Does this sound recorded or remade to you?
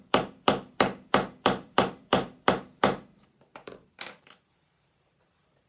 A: remade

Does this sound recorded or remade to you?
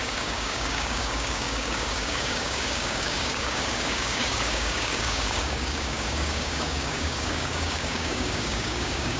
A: remade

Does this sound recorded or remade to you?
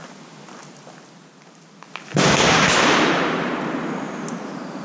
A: recorded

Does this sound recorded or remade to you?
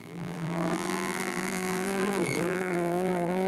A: remade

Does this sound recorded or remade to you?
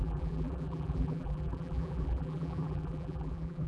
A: remade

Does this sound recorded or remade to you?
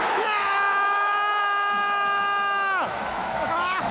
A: remade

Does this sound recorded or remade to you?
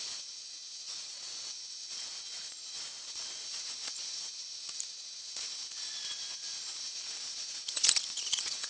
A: remade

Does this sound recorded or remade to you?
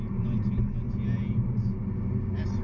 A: recorded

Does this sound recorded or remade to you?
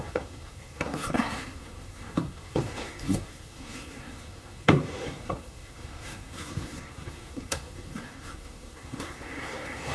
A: remade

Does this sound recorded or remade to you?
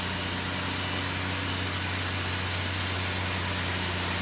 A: recorded